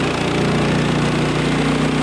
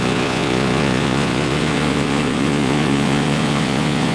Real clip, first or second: first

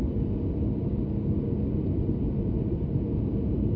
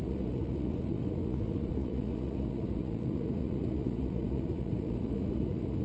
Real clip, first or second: first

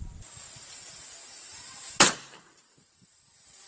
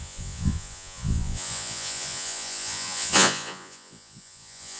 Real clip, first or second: first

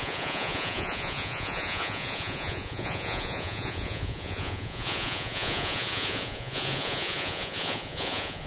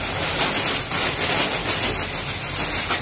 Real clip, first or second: second